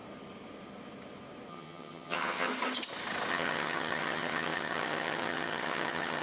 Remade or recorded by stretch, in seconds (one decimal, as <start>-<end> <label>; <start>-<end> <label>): 0.0-1.5 recorded; 1.5-2.5 remade; 2.5-3.3 recorded; 3.3-6.2 remade